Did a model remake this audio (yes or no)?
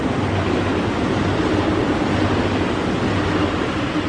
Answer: no